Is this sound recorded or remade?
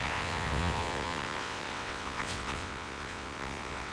remade